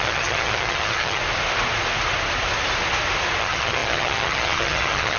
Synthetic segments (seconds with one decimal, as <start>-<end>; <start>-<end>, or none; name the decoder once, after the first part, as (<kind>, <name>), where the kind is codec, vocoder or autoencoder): 0.0-1.2 (vocoder, HiFi-GAN); 3.4-5.2